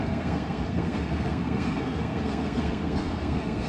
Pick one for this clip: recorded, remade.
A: remade